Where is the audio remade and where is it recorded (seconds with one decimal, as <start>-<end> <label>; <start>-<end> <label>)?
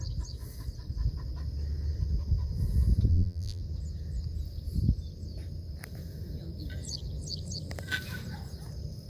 0.0-3.1 recorded; 3.1-3.6 remade; 3.6-9.1 recorded